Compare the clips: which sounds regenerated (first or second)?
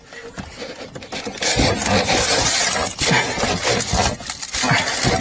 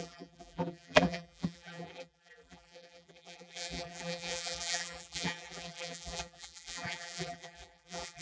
second